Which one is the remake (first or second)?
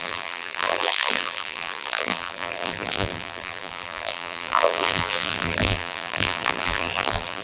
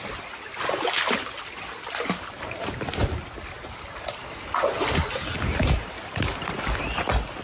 first